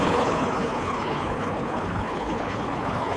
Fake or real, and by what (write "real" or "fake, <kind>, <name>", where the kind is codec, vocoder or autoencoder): fake, codec, HILCodec